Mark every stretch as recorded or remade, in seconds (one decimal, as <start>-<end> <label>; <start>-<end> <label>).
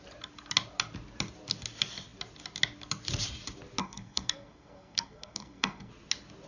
0.0-3.8 recorded; 3.8-5.9 remade; 5.9-6.5 recorded